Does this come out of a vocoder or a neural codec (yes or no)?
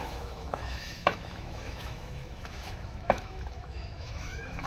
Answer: yes